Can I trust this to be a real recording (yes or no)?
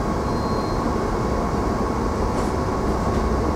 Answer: yes